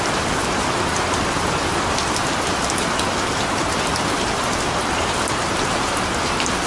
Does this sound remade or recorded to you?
recorded